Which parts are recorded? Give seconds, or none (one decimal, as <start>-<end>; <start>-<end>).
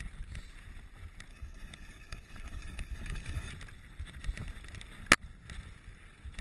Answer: 0.0-1.3; 3.5-6.4